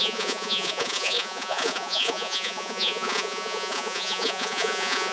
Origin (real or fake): fake